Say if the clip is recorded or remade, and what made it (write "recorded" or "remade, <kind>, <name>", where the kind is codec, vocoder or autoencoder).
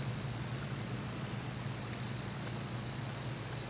remade, vocoder, Vocos